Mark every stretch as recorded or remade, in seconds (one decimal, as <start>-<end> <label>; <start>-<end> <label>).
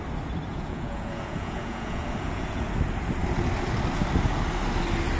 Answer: 0.0-0.5 recorded; 0.5-2.7 remade; 2.7-5.2 recorded